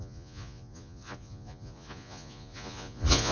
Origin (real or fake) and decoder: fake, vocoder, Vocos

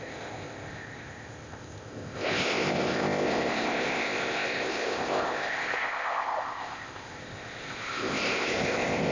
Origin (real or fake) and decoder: fake, codec, ZipCodec